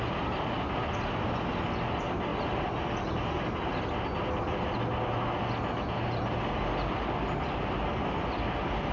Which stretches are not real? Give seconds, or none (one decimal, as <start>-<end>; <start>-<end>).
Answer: none